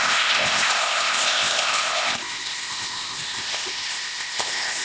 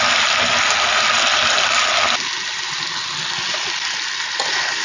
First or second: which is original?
second